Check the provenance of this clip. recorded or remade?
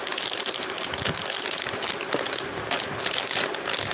recorded